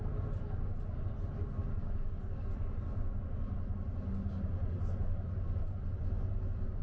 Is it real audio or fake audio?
real